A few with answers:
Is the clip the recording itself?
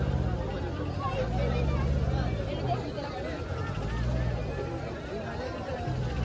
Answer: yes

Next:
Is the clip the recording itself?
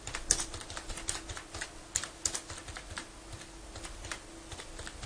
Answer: yes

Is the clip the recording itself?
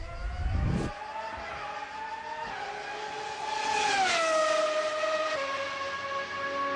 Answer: yes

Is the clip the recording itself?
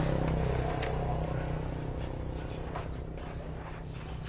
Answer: yes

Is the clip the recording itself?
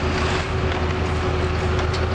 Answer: yes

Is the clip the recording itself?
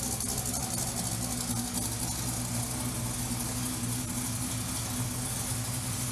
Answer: yes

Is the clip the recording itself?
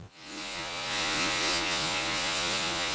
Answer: no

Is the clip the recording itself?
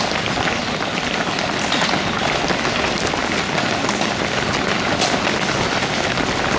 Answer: yes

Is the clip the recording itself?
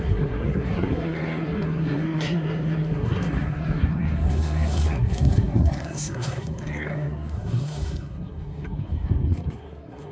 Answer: no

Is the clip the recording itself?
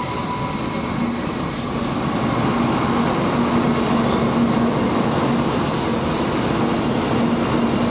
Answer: yes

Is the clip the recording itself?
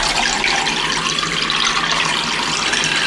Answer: yes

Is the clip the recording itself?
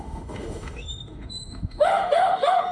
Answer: no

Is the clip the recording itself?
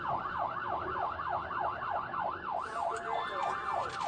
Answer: yes